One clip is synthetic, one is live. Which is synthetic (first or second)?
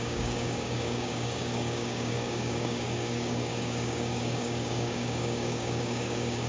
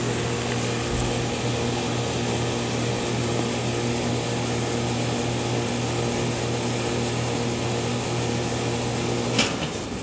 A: first